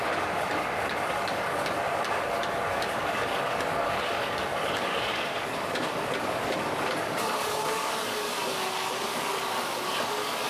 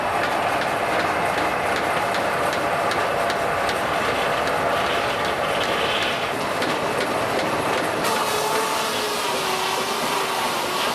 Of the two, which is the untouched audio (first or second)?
second